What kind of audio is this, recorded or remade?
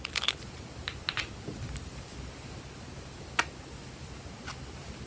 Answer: recorded